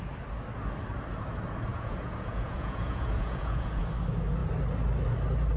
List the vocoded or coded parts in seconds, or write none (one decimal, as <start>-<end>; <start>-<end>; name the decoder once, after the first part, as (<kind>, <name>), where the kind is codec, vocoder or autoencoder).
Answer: 1.7-3.8 (vocoder, Vocos)